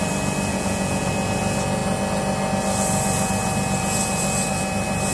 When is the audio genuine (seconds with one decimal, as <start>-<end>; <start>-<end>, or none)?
0.0-0.5; 1.1-5.1